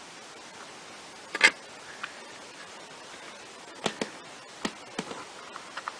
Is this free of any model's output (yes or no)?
yes